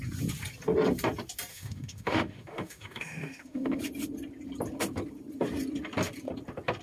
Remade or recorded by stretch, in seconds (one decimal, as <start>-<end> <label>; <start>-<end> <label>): 0.0-1.5 recorded; 1.5-3.8 remade; 3.8-6.8 recorded